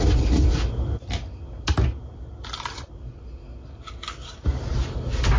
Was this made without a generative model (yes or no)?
yes